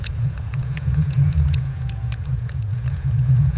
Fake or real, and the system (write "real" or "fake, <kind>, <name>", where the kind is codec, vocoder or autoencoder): fake, vocoder, Vocos